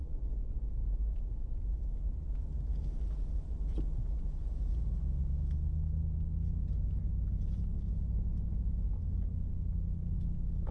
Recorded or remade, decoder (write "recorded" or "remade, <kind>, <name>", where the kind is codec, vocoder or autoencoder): recorded